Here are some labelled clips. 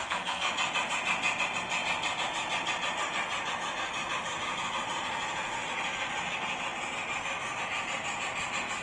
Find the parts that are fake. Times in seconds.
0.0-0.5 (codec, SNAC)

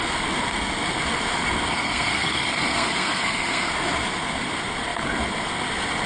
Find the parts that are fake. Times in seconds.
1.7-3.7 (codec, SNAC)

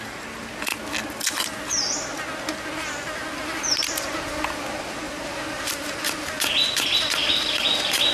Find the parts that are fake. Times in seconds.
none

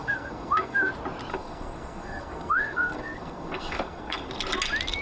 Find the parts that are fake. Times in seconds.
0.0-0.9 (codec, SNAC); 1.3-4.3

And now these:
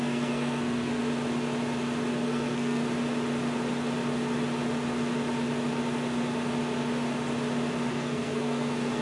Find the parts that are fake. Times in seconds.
0.0-1.0 (codec, SNAC); 2.1-2.8; 7.9-9.0

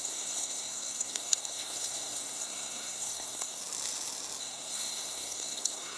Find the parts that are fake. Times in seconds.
0.0-3.6 (codec, SNAC); 4.4-6.0

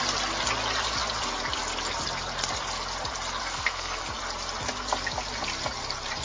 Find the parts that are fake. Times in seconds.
3.4-4.0 (codec, SNAC)

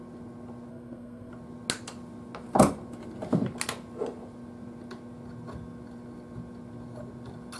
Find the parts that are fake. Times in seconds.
0.7-1.3 (codec, SNAC)